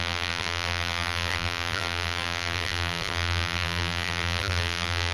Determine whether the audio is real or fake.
fake